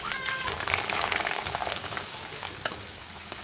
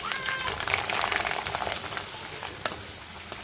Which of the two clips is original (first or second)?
second